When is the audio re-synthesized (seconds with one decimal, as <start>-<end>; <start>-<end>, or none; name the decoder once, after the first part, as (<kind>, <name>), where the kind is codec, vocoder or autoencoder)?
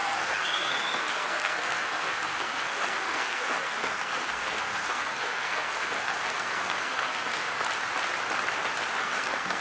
0.0-7.6 (codec, SNAC); 9.0-9.6